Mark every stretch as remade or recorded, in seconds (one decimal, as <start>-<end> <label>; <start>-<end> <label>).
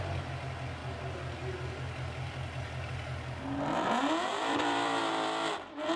0.0-0.8 recorded; 0.8-2.9 remade; 2.9-4.3 recorded; 4.3-5.5 remade; 5.5-6.0 recorded